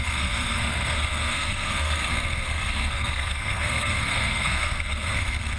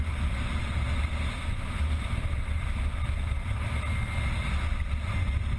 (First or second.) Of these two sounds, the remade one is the first